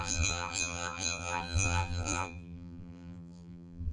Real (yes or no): no